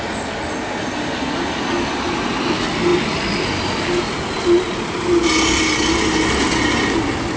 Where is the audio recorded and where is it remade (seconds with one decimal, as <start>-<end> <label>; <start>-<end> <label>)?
0.0-7.4 recorded